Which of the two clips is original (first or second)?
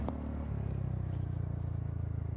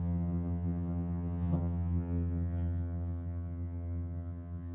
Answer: first